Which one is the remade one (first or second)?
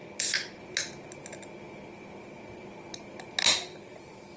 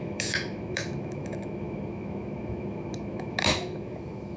second